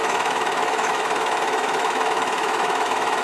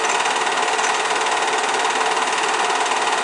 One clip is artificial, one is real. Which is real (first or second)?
second